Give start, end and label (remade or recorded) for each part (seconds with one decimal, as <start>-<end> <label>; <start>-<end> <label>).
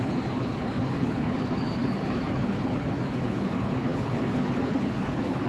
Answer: 0.0-5.5 remade